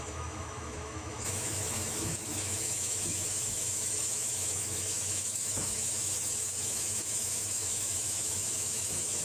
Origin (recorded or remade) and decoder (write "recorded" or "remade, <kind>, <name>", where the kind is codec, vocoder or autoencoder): remade, autoencoder, DAC-VAE